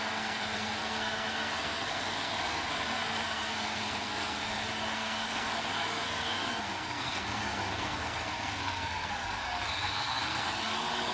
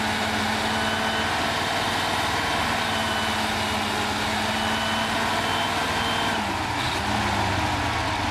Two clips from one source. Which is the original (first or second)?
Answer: second